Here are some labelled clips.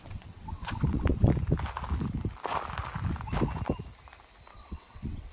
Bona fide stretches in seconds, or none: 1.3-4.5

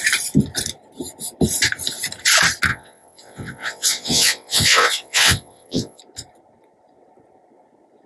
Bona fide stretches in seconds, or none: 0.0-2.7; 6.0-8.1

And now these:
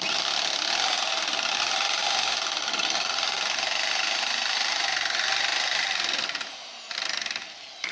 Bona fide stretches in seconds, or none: 0.0-7.9

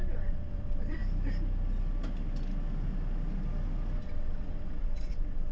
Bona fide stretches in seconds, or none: 1.0-4.0

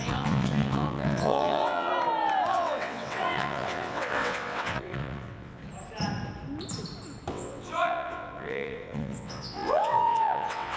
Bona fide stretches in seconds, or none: 1.9-2.5; 5.6-7.3

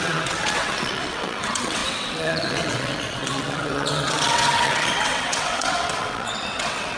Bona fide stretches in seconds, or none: none

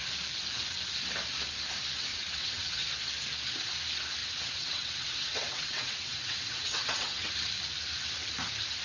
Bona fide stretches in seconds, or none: 0.0-2.1; 2.9-4.2; 7.3-8.8